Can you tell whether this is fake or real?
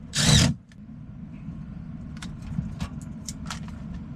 real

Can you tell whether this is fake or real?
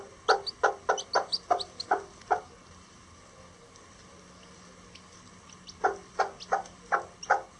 real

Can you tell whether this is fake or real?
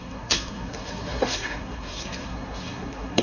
fake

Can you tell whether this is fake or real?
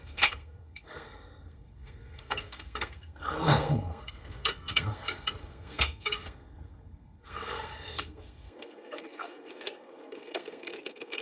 fake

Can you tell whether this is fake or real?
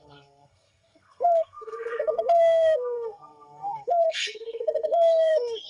fake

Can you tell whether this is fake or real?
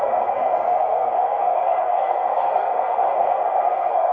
fake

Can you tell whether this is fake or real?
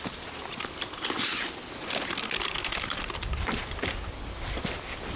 real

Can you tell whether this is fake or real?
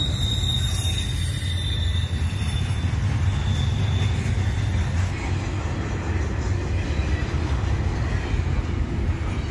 real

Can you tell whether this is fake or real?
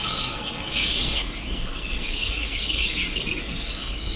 fake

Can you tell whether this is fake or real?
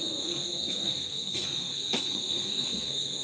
fake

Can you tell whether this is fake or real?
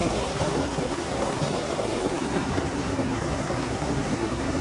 fake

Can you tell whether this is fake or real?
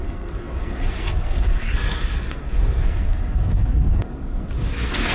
fake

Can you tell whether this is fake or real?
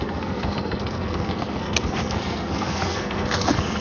fake